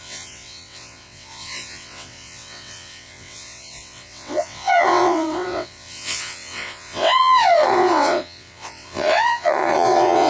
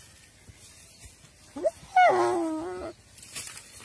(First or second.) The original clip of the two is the second